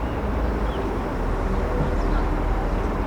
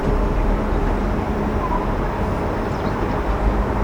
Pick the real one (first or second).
first